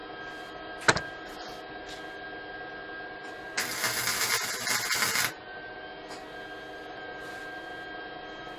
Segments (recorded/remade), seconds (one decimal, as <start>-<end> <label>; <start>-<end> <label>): 0.0-8.6 recorded